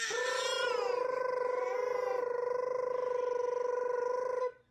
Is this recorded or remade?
recorded